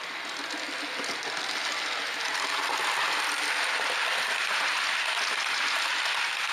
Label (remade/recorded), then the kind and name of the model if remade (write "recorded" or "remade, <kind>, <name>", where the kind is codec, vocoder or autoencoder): recorded